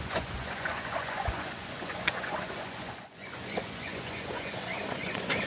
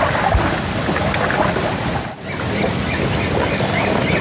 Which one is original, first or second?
second